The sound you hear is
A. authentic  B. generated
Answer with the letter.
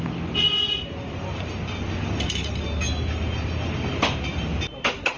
A